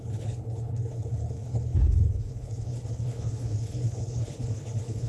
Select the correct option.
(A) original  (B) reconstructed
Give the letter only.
B